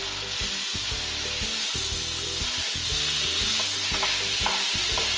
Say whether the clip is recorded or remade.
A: recorded